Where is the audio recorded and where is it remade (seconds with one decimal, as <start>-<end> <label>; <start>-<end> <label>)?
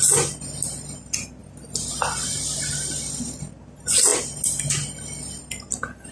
0.0-6.1 recorded